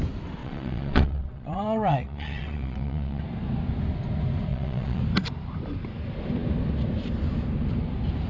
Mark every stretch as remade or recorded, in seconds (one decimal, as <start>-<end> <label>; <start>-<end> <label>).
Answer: 0.0-0.4 recorded; 0.4-3.2 remade; 3.2-4.5 recorded; 4.5-5.0 remade; 5.0-8.3 recorded